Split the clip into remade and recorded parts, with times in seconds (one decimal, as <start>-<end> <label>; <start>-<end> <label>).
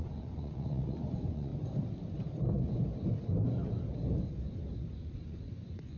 0.0-1.5 remade; 1.5-5.1 recorded; 5.1-6.0 remade